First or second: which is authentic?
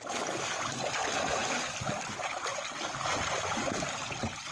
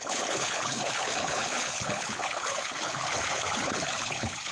first